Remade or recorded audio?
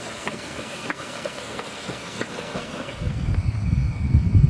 remade